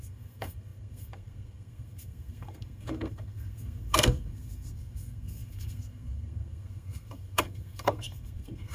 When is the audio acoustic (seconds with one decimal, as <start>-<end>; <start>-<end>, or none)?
none